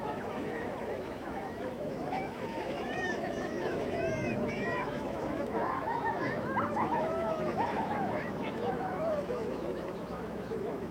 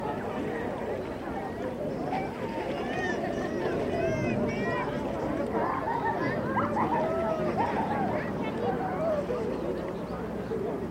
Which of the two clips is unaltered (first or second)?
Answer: second